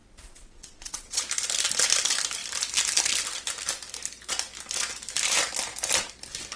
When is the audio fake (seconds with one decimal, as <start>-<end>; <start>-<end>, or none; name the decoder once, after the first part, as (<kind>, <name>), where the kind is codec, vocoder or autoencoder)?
0.0-1.2 (vocoder, WaveNeXt)